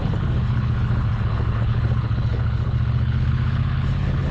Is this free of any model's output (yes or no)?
no